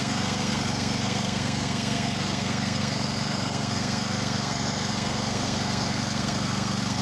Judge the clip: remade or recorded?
remade